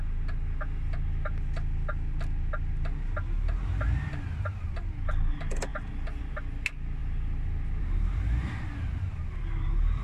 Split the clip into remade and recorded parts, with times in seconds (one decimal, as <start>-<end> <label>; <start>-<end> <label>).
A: 0.0-10.0 recorded